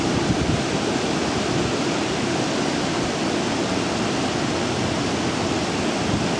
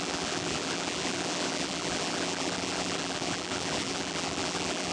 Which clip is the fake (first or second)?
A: second